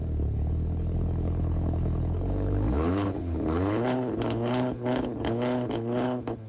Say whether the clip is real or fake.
fake